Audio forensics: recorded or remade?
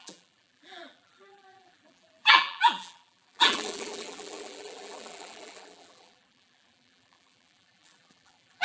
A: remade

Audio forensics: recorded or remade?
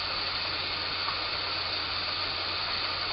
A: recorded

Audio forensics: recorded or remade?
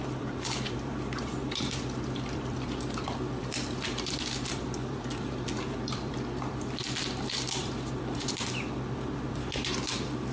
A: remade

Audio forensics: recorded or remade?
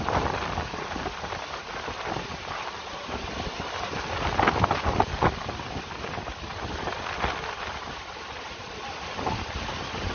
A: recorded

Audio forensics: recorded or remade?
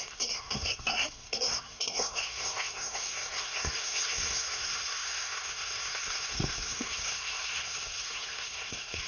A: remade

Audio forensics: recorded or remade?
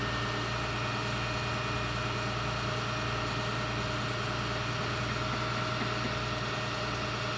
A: recorded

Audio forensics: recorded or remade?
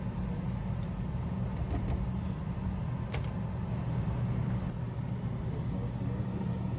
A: recorded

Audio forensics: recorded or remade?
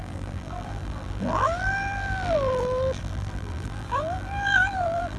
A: remade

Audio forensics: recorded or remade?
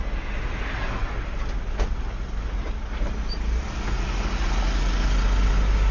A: recorded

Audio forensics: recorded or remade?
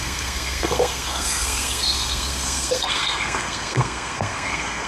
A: remade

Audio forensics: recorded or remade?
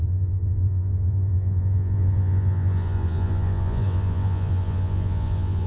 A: remade